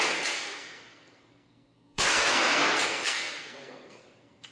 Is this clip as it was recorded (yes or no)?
no